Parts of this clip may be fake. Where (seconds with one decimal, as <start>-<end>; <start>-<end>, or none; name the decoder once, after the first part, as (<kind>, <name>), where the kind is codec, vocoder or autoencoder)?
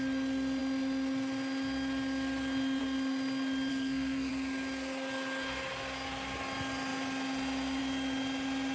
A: 3.7-4.3 (codec, SNAC)